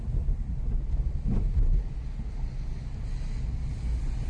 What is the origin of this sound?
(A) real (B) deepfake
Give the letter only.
A